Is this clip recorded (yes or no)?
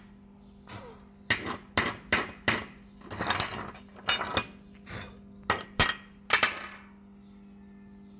yes